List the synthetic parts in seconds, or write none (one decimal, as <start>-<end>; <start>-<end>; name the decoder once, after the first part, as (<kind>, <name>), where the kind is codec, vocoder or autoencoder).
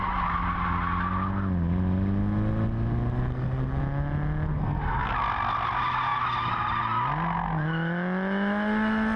3.3-3.8 (codec, SNAC); 4.6-5.1